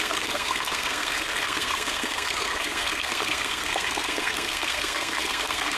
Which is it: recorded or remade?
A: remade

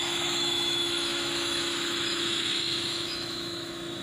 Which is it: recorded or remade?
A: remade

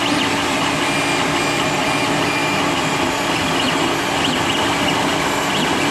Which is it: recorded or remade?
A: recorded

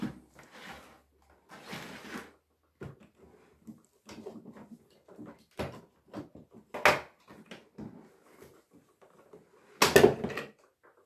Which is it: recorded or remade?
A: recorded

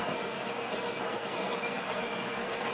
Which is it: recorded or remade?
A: remade